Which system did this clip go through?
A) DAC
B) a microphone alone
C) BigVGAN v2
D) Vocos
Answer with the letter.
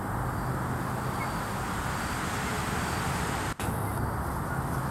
B